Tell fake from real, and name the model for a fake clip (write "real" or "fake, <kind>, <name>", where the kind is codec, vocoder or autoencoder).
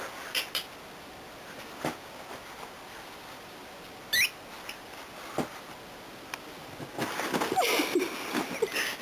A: real